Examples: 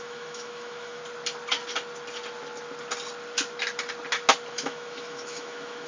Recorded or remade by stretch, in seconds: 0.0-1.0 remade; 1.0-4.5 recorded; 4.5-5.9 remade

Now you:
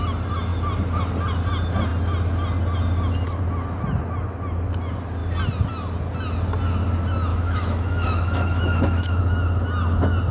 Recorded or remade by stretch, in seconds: 0.0-7.3 recorded; 7.3-9.2 remade; 9.2-10.3 recorded

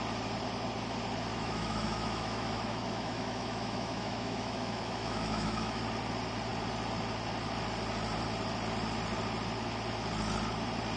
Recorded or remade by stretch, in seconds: 0.0-1.3 recorded; 1.3-5.8 remade; 5.8-11.0 recorded

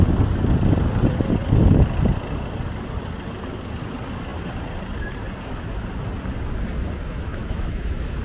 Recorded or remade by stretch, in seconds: 0.0-7.3 recorded; 7.3-8.2 remade

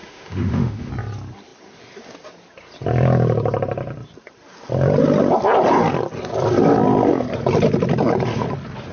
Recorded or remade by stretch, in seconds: 0.0-0.9 remade; 0.9-8.9 recorded

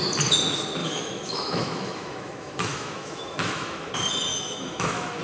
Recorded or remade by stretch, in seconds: 0.0-0.8 recorded; 0.8-3.9 remade; 3.9-4.3 recorded; 4.3-5.2 remade

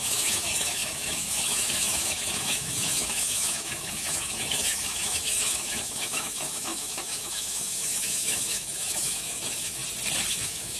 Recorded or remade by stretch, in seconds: 0.0-9.8 remade; 9.8-10.3 recorded; 10.3-10.8 remade